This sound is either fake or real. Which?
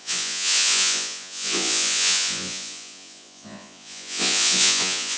fake